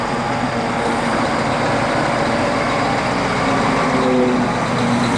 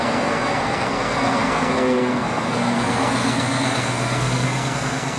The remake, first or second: second